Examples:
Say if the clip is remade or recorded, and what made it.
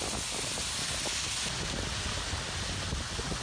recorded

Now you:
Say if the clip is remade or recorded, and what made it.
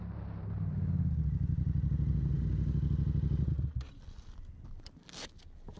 recorded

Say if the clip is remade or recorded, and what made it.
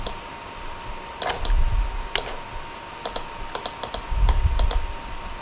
recorded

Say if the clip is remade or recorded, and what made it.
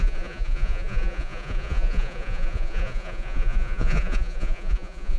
remade, vocoder, Vocos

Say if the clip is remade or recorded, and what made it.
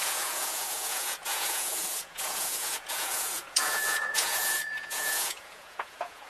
remade, vocoder, Vocos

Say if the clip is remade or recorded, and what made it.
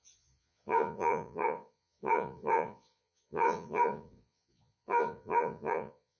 remade, vocoder, Vocos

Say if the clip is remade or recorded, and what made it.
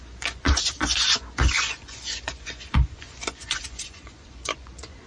remade, vocoder, Vocos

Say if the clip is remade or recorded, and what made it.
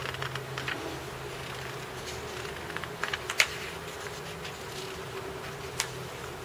recorded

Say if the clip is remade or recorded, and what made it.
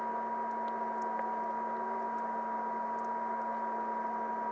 recorded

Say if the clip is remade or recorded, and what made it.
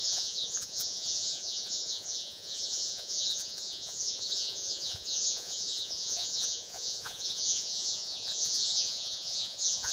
remade, vocoder, Vocos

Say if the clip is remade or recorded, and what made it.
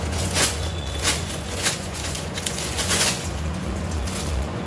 remade, vocoder, Vocos